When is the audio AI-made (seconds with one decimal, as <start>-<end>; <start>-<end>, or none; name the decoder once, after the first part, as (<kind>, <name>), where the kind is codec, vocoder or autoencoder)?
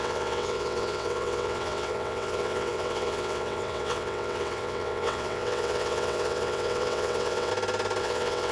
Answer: 0.0-7.5 (vocoder, WaveNeXt); 8.0-8.5